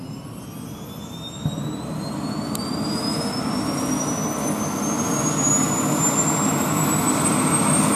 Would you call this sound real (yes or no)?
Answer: yes